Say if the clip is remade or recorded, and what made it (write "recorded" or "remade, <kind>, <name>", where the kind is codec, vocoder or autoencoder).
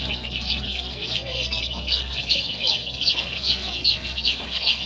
remade, codec, SNAC